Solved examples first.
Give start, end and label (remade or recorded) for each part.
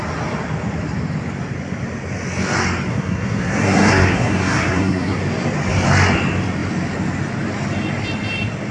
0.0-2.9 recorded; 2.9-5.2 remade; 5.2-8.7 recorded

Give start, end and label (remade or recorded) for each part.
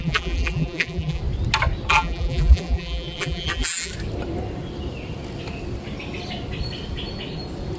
0.0-1.2 remade; 1.2-1.9 recorded; 1.9-3.9 remade; 3.9-7.8 recorded